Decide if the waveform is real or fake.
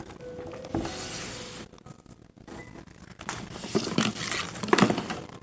real